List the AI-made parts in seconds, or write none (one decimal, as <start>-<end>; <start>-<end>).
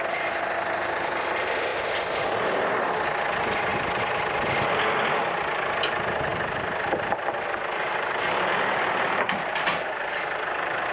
6.3-10.9